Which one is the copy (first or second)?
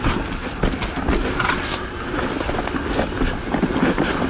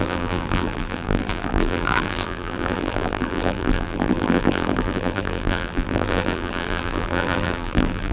second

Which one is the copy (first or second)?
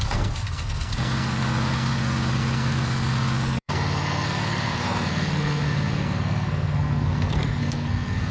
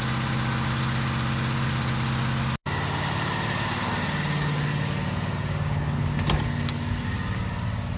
first